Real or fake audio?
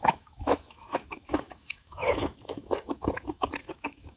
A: fake